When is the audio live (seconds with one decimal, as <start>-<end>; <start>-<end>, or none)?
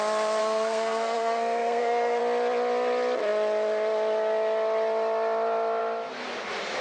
0.0-0.4; 2.2-6.8